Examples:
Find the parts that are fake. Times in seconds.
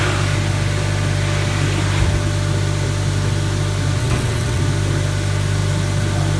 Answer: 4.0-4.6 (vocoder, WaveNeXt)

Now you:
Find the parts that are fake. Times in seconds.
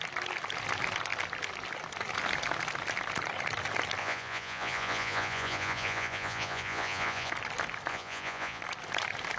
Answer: 4.0-7.3 (vocoder, Vocos); 7.9-8.6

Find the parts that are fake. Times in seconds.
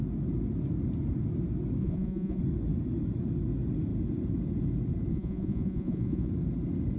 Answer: 1.8-2.4 (vocoder, Vocos); 5.1-6.3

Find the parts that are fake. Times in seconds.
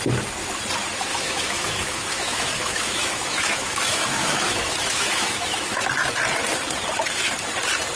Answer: 1.1-5.9 (autoencoder, DAC-VAE)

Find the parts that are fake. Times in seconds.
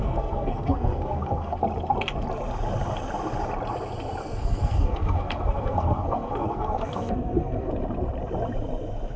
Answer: 0.0-1.6 (codec, SNAC); 4.2-7.7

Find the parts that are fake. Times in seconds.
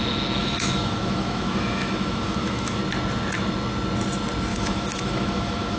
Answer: 0.4-2.8 (autoencoder, DAC-VAE); 4.5-5.8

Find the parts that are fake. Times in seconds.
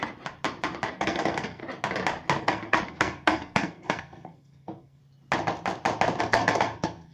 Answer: 0.9-1.6 (codec, SNAC); 2.4-5.0; 6.2-7.1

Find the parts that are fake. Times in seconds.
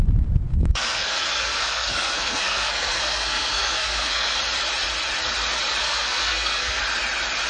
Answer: 0.5-4.4 (codec, SNAC); 5.8-6.8